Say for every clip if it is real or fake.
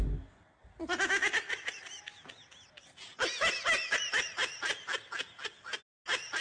real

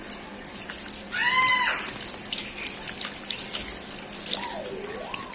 real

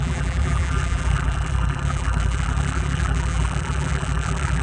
fake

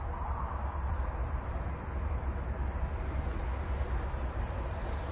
real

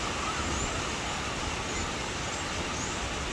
real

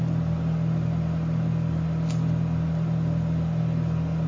real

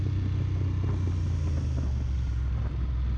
real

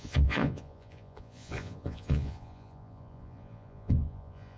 fake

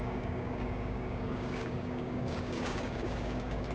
fake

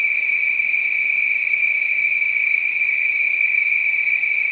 fake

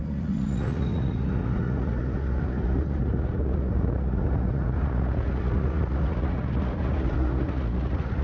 fake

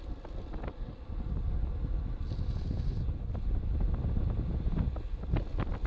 real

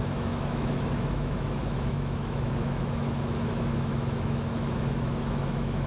fake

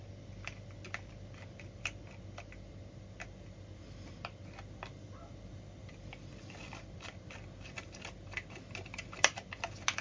real